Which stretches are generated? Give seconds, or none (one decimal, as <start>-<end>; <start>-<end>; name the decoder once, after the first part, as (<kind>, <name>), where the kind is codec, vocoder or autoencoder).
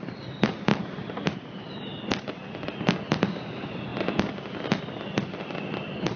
0.7-1.8 (vocoder, BigVGAN v2)